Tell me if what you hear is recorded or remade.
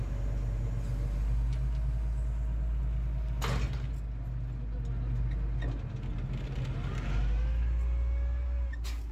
recorded